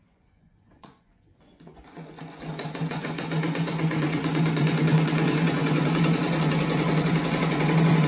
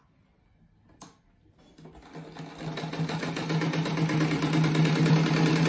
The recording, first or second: second